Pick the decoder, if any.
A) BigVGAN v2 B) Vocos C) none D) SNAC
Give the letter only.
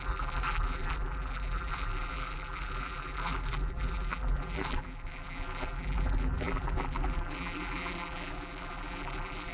A